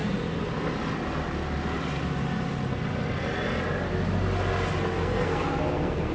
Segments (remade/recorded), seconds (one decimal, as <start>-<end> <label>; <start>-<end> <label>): 0.0-5.0 recorded; 5.0-6.1 remade